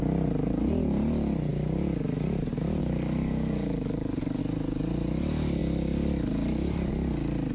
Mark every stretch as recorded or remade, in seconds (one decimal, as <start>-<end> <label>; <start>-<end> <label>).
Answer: 0.0-2.8 recorded; 2.8-4.4 remade; 4.4-7.5 recorded